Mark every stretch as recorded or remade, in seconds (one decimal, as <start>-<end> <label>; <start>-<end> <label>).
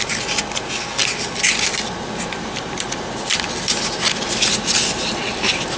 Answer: 0.0-5.8 recorded